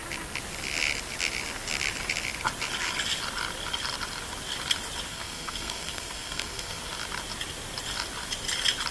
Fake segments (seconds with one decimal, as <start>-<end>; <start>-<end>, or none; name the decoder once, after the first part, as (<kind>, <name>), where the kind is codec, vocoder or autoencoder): 5.1-6.8 (codec, SNAC)